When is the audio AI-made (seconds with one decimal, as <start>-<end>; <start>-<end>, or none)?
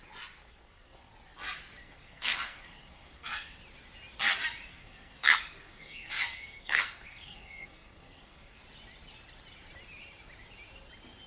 0.4-1.1; 1.8-3.6; 4.7-8.6